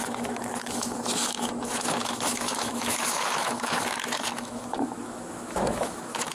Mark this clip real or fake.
fake